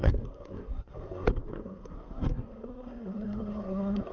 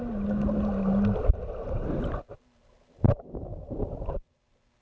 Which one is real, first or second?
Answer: second